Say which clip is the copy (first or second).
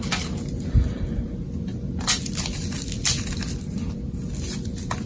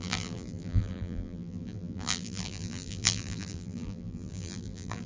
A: second